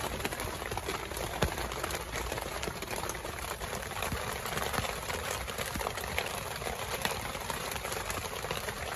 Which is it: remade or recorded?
remade